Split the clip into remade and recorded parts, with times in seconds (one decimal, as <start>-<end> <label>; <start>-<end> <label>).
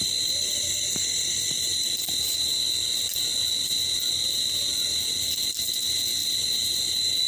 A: 0.0-3.3 recorded; 3.3-5.5 remade; 5.5-6.2 recorded; 6.2-6.8 remade; 6.8-7.3 recorded